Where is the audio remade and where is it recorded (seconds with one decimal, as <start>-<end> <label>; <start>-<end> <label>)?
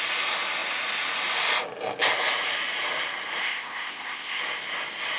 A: 0.0-3.4 recorded; 3.4-4.4 remade; 4.4-5.2 recorded